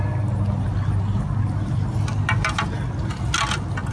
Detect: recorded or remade recorded